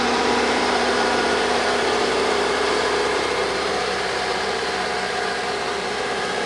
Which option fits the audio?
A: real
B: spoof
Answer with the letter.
B